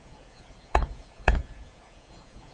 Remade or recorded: remade